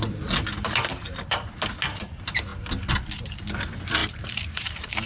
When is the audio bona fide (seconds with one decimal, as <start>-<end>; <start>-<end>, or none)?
0.0-4.0